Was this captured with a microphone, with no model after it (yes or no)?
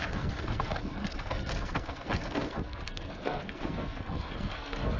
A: no